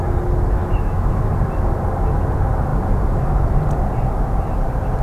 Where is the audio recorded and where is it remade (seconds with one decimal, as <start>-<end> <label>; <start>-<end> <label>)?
0.0-0.6 recorded; 0.6-1.3 remade; 1.3-5.0 recorded